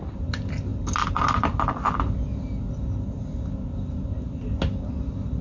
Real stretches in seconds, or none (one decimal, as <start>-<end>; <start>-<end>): 0.0-0.7; 2.0-5.4